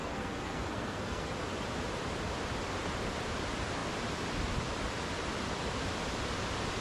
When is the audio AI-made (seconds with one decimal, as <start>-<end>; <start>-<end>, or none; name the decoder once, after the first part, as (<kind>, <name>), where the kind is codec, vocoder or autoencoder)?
0.0-1.3 (codec, SNAC)